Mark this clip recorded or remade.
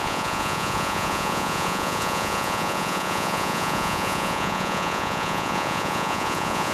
remade